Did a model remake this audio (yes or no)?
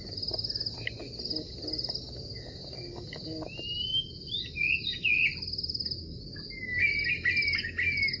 no